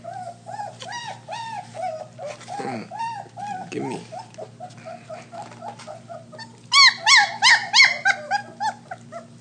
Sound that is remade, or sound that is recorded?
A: recorded